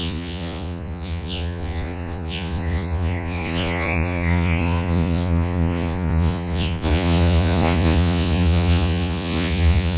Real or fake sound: fake